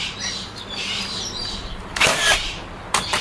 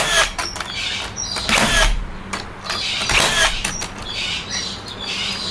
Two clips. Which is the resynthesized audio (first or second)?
first